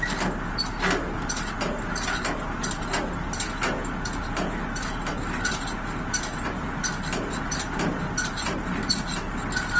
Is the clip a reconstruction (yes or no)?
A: no